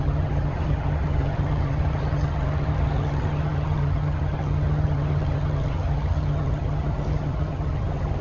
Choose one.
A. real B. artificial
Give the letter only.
B